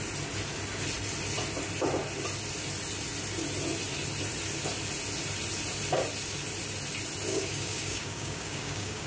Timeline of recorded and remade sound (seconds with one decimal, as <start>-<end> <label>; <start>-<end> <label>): 0.0-7.3 recorded; 7.3-9.1 remade